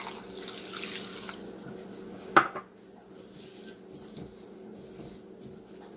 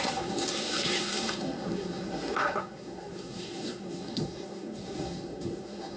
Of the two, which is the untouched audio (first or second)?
first